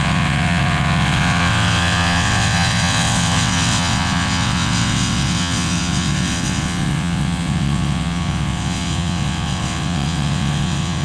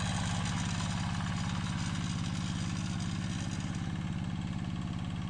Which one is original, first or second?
second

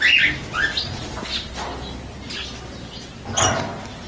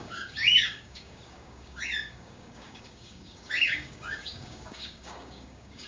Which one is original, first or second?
first